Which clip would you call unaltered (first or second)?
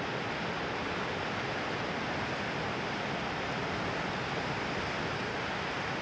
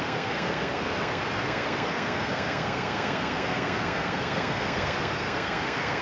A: first